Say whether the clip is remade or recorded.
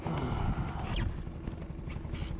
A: recorded